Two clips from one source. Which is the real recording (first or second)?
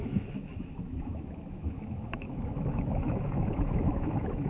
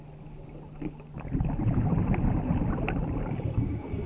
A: second